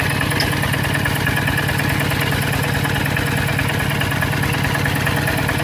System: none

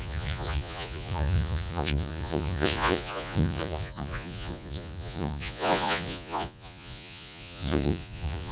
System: vocoder, Vocos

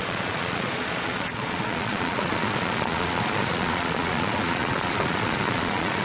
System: vocoder, Vocos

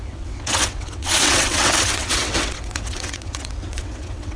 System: vocoder, WaveNeXt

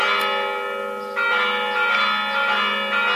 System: none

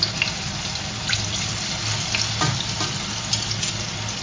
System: none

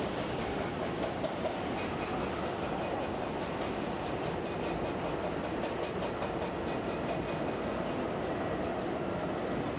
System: none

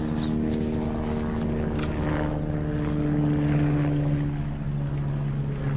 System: none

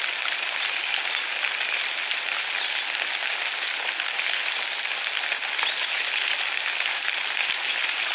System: none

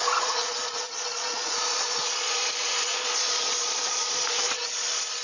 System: vocoder, Vocos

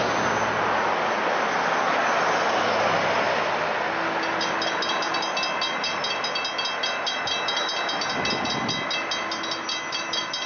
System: none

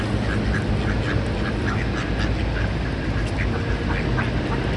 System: none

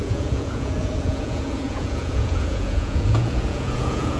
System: vocoder, Vocos